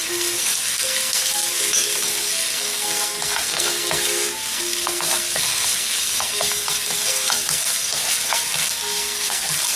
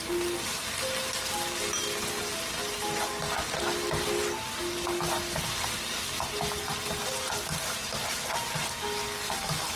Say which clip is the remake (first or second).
first